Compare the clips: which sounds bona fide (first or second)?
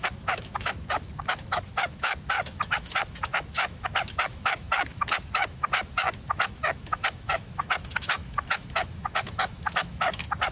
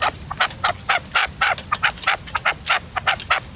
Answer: second